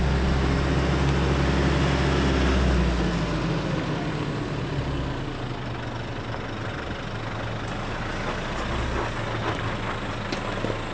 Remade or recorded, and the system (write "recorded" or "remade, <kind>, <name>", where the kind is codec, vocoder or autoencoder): recorded